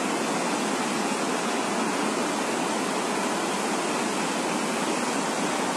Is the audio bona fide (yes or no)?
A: yes